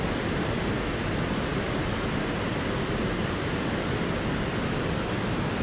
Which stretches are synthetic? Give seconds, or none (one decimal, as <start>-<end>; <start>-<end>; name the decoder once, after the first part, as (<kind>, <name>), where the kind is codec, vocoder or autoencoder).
none